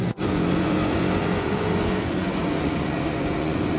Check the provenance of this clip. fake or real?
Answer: fake